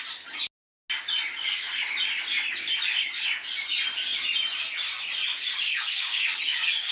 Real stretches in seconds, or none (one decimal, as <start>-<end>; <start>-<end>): 0.0-5.3